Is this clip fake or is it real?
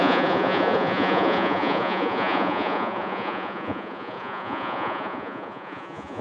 fake